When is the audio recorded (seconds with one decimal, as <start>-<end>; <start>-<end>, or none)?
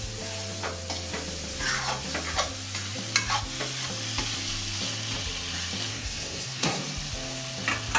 0.0-5.9; 6.8-8.0